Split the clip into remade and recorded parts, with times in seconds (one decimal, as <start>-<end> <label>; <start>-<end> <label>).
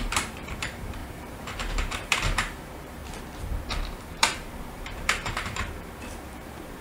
0.0-3.0 remade; 3.0-3.9 recorded; 3.9-6.8 remade